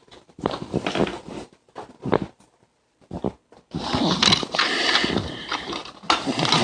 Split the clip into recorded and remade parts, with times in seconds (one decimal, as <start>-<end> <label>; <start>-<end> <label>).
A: 0.0-1.3 remade; 1.3-3.4 recorded; 3.4-4.0 remade; 4.0-6.6 recorded